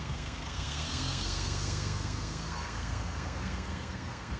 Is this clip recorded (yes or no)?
no